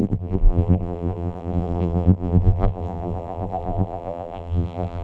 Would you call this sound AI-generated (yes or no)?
yes